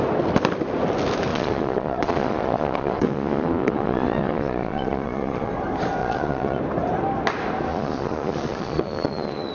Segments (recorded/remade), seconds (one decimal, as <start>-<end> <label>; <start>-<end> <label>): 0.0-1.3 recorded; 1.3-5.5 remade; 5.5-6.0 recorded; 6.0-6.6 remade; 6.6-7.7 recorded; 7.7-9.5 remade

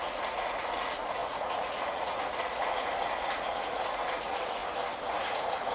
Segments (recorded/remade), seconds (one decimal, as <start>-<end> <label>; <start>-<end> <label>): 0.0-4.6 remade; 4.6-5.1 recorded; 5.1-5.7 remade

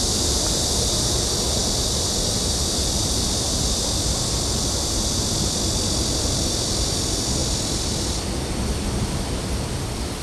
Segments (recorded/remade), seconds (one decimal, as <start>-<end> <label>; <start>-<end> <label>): 0.0-10.2 recorded

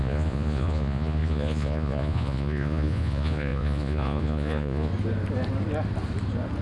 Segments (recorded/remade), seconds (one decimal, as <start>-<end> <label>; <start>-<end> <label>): 0.0-4.9 remade; 4.9-6.6 recorded

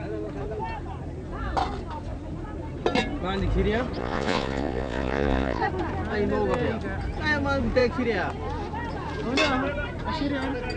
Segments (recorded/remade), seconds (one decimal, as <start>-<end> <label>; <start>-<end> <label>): 0.0-4.0 recorded; 4.0-5.6 remade; 5.6-10.8 recorded